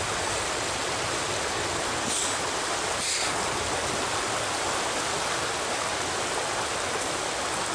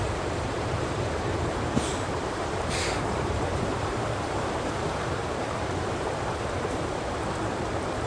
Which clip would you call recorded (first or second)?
first